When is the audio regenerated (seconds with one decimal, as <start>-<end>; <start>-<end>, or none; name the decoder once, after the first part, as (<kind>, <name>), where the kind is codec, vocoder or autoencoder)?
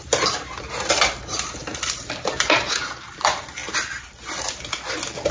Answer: 0.0-3.6 (vocoder, BigVGAN v2)